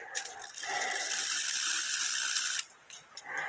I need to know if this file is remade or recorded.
recorded